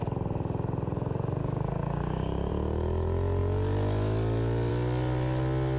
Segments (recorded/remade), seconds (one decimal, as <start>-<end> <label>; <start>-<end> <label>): 0.0-1.4 recorded; 1.4-2.5 remade; 2.5-5.8 recorded